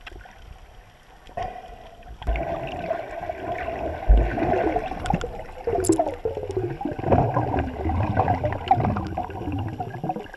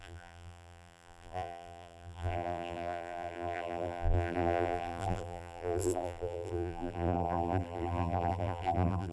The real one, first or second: first